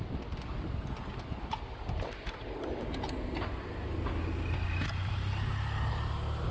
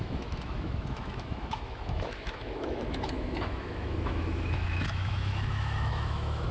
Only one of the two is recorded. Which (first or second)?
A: first